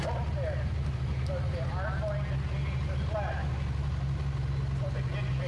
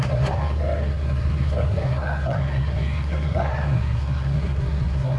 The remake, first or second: second